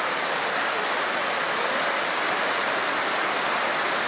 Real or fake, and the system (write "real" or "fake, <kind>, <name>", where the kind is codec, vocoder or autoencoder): real